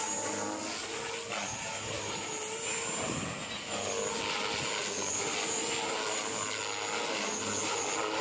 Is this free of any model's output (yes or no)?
yes